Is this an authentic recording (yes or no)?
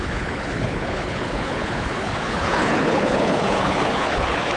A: no